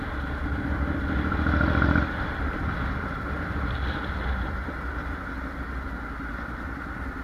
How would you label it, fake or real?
real